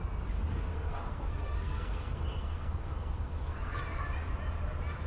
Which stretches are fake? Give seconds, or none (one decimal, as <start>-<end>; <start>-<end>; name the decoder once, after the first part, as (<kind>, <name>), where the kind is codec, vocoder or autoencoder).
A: 0.7-3.8 (codec, SNAC)

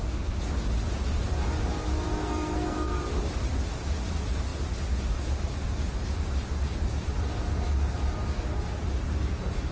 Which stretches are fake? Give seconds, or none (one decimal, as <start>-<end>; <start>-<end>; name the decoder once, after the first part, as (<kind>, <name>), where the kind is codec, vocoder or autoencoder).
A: 2.2-3.0 (codec, SNAC)

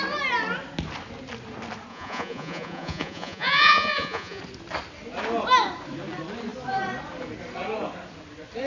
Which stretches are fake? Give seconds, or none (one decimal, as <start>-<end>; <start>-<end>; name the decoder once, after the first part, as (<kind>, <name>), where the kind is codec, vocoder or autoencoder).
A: 1.9-4.4 (vocoder, Vocos)